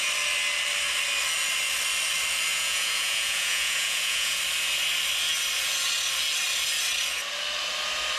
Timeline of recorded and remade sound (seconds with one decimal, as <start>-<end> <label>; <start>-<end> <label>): 0.0-2.5 recorded; 2.5-4.4 remade; 4.4-8.2 recorded